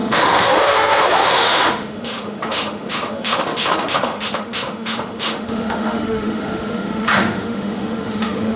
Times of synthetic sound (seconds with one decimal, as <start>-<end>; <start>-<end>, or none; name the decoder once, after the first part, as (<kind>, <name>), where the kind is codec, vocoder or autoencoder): 0.0-8.6 (autoencoder, DAC-VAE)